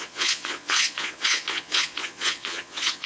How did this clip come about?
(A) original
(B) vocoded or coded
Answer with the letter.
B